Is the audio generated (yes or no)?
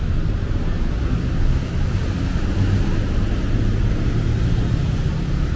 no